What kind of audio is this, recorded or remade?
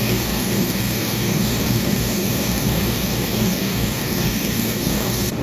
remade